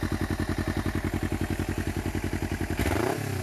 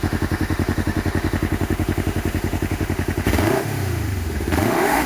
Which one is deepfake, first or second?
second